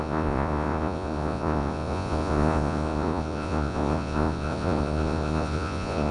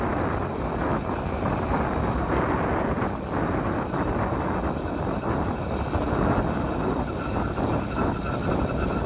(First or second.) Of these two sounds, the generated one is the first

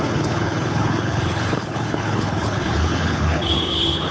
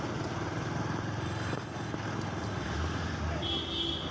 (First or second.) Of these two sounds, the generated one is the first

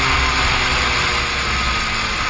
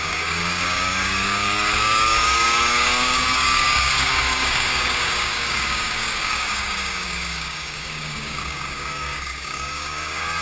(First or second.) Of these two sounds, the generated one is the second